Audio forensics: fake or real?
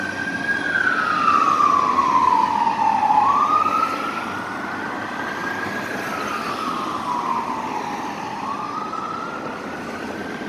real